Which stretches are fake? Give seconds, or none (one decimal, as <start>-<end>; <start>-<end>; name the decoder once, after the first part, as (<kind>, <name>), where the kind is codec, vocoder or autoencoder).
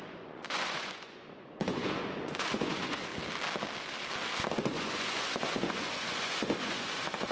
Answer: 0.0-3.1 (vocoder, Vocos); 4.5-7.3